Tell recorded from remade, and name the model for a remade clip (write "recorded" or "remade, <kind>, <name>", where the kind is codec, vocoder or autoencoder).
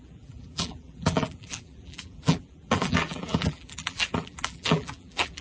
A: remade, vocoder, BigVGAN v2